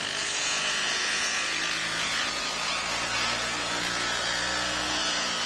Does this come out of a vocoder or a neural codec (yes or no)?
yes